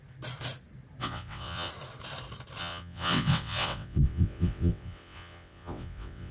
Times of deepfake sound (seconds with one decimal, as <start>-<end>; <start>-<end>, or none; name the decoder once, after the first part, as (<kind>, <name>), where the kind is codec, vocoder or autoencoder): 1.0-1.7 (vocoder, WaveNeXt); 2.6-6.3

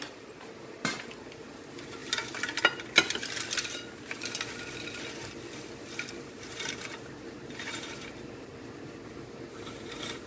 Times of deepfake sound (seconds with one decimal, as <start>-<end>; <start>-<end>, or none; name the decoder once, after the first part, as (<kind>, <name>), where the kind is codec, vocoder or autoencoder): 0.0-2.0 (vocoder, BigVGAN v2); 6.2-8.5; 9.1-10.3

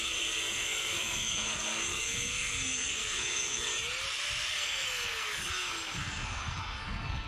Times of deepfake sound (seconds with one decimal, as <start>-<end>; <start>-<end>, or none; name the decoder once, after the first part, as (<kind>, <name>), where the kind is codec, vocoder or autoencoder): 0.0-3.7 (codec, SNAC); 4.5-7.3

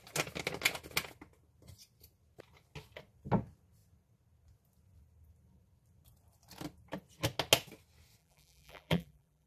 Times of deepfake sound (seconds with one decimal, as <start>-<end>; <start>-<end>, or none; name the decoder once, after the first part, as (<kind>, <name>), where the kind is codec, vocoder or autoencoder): 8.2-9.5 (vocoder, BigVGAN v2)